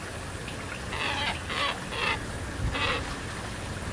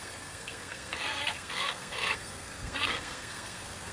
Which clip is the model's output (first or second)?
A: second